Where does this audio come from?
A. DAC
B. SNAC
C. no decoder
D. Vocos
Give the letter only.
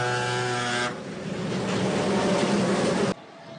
C